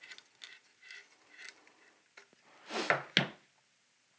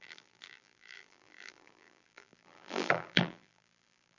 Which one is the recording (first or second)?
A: first